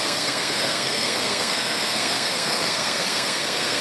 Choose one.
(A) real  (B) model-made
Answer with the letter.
B